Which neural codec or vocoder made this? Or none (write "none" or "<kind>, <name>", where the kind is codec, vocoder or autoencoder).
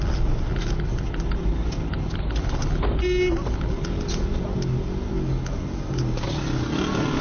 none